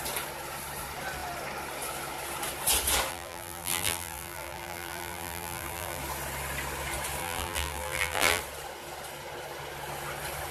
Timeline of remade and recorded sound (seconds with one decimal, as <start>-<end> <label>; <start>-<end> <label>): 0.0-3.1 recorded; 3.1-6.0 remade; 6.0-7.2 recorded; 7.2-8.4 remade; 8.4-10.5 recorded